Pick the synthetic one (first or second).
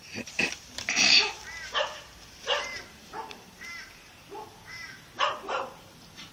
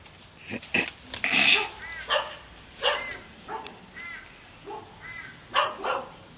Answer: first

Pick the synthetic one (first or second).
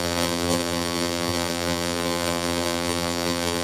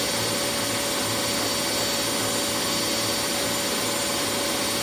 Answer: first